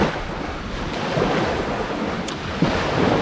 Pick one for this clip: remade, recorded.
recorded